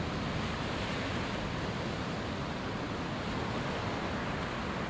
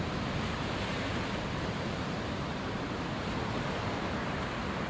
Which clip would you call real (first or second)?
first